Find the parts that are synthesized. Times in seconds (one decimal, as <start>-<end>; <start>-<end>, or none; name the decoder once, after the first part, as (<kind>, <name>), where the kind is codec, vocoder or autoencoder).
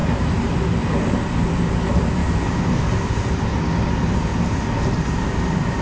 none